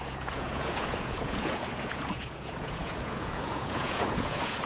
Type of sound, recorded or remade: remade